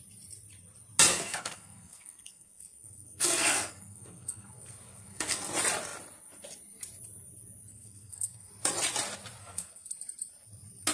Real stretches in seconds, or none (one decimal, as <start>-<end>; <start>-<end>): 0.0-1.1; 5.4-7.7; 8.5-9.4; 9.9-10.9